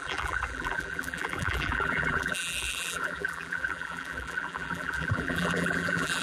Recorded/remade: remade